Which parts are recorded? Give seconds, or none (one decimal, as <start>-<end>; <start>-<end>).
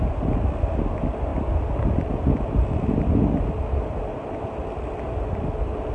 0.0-5.9